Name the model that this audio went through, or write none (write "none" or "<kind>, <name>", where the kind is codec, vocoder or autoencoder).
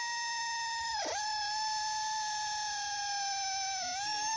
none